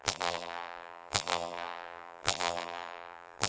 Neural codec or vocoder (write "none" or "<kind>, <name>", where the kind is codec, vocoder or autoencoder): vocoder, BigVGAN v2